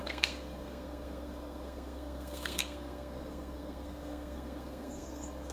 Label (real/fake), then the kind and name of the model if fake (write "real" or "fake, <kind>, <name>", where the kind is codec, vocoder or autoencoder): fake, codec, SNAC